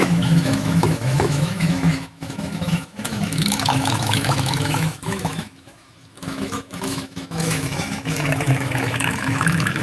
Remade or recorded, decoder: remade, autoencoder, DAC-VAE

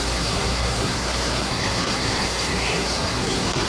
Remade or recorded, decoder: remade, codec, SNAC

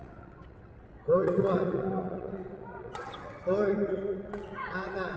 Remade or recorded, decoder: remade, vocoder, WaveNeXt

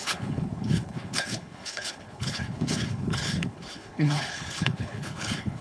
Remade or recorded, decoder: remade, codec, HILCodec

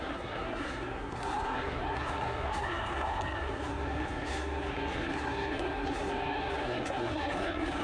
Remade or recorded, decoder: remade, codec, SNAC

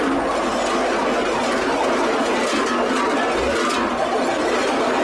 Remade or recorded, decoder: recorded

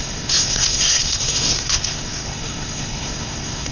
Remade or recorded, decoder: remade, codec, SNAC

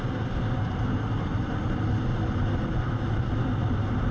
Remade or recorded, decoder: recorded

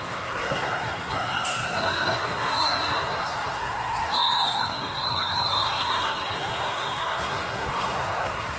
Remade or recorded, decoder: remade, codec, SNAC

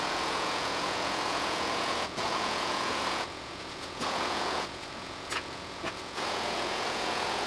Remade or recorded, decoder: remade, vocoder, Vocos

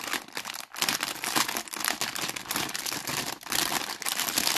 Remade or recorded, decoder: recorded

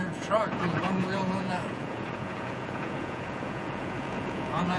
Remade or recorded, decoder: remade, vocoder, Vocos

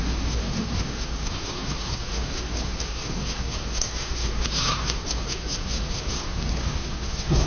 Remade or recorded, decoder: remade, codec, SNAC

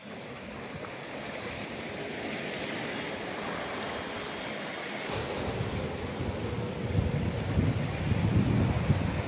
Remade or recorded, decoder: recorded